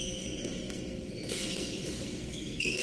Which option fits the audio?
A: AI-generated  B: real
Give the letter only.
A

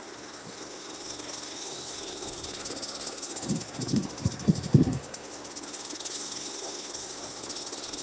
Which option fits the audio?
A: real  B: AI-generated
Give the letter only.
B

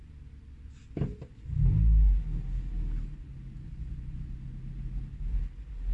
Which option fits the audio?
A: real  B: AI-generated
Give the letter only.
A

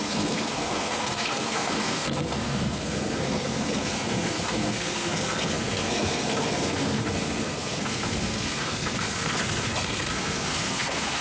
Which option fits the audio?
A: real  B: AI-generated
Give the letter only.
B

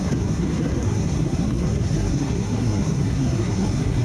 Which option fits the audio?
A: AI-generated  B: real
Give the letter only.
A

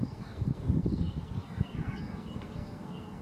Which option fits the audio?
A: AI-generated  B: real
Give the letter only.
A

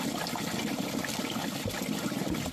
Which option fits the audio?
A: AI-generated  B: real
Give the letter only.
B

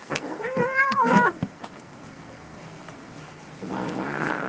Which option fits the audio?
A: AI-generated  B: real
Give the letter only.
A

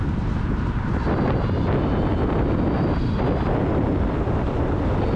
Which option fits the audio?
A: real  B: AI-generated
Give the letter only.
A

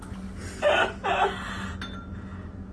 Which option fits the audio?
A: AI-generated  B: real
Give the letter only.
B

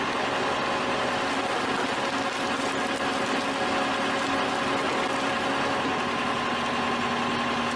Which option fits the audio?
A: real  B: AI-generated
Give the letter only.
A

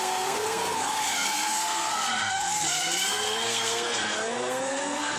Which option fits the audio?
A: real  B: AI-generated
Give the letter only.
B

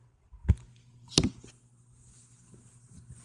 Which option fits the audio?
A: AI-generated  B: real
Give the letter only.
B